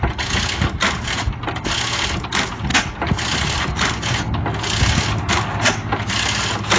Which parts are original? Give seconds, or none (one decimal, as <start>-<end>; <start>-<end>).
0.0-6.8